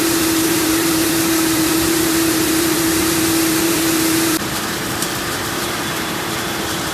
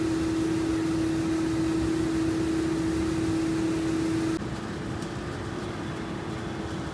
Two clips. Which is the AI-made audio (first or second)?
first